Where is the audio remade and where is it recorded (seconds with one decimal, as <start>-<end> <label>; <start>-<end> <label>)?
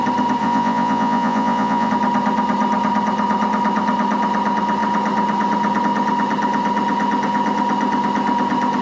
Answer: 0.0-0.4 recorded; 0.4-1.9 remade; 1.9-8.8 recorded